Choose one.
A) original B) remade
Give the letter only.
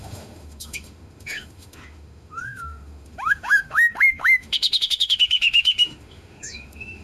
B